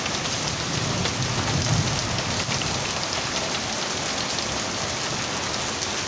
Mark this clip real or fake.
real